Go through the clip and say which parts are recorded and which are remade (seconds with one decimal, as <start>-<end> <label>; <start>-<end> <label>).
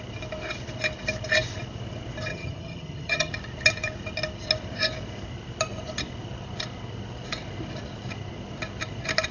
0.0-2.3 recorded; 2.3-3.3 remade; 3.3-9.3 recorded